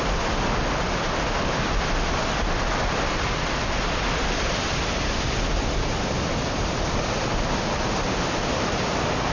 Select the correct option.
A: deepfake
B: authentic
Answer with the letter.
B